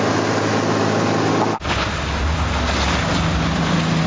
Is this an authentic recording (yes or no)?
yes